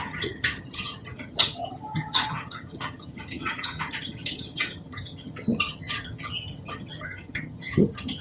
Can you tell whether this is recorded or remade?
remade